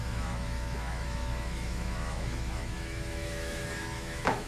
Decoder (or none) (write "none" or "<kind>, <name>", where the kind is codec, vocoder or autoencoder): autoencoder, DAC-VAE